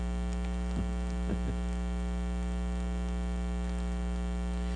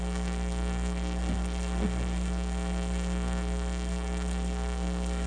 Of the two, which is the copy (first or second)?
second